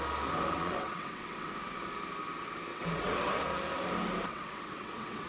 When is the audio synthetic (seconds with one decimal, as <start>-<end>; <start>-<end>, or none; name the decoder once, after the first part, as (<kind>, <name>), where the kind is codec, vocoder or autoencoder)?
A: 0.6-1.5 (vocoder, WaveNeXt); 2.7-3.3; 4.3-5.3